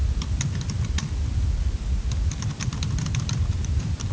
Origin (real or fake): real